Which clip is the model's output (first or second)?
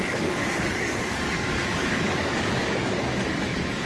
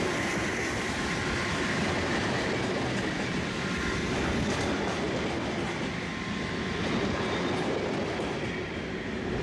first